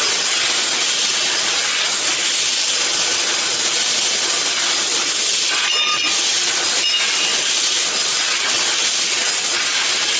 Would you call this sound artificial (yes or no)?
no